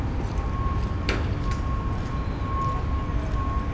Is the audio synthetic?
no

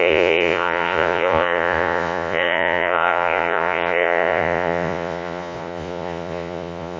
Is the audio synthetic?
yes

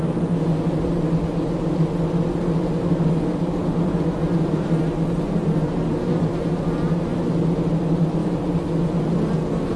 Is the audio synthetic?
no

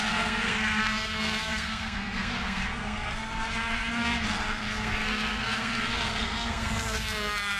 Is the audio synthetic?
yes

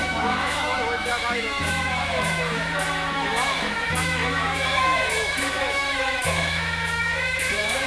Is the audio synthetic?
yes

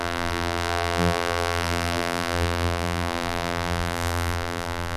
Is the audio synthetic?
yes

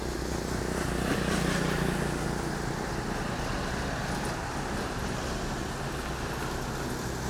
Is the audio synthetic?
no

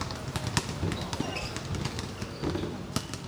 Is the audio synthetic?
no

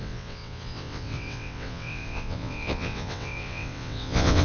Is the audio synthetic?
yes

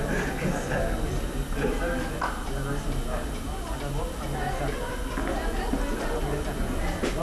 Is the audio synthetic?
no